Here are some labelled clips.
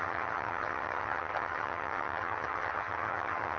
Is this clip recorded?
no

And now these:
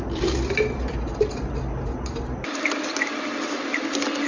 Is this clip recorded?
yes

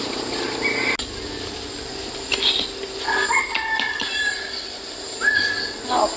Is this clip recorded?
yes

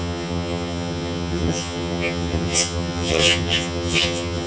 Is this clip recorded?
no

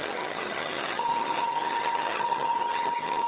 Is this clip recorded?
no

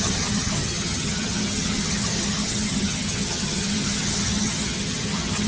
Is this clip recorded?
no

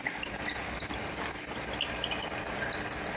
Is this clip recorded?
yes